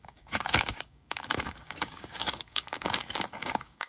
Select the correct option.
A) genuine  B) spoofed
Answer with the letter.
B